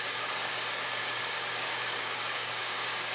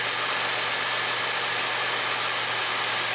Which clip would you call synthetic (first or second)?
first